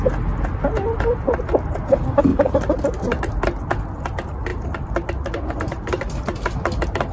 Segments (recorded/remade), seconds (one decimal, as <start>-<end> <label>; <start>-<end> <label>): 0.0-2.3 recorded; 2.3-3.3 remade; 3.3-4.5 recorded; 4.5-6.1 remade; 6.1-7.1 recorded